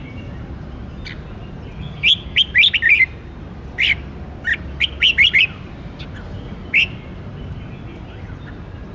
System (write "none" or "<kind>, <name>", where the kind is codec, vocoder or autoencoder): none